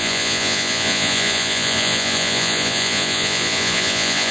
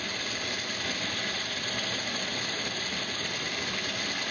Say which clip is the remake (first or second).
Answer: first